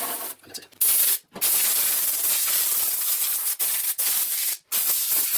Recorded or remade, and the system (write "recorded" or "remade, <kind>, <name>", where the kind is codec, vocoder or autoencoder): recorded